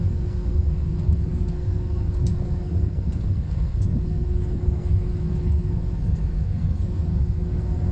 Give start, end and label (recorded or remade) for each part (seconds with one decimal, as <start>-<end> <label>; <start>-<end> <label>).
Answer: 0.0-7.9 remade